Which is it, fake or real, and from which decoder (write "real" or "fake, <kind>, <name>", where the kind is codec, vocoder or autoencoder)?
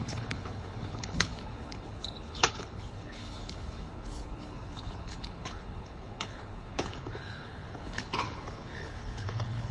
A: fake, codec, HILCodec